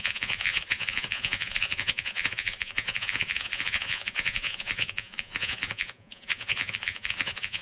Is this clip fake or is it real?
fake